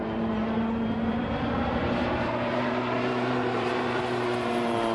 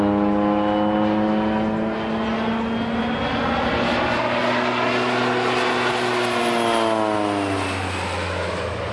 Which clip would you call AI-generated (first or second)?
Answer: first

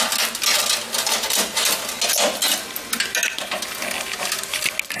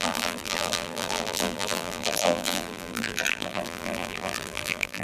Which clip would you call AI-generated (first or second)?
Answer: second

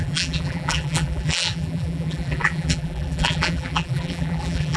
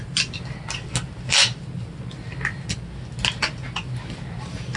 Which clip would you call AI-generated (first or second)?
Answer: first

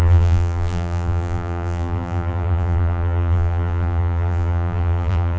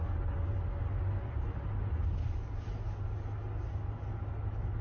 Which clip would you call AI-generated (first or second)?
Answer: first